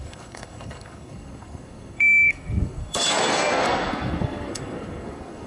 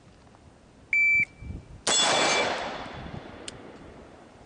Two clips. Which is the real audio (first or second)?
second